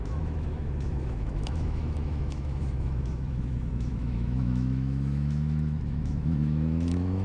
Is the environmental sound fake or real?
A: fake